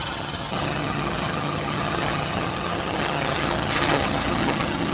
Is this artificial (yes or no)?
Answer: yes